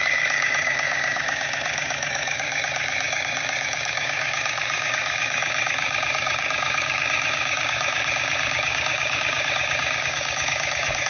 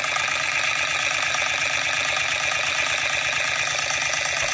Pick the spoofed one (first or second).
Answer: first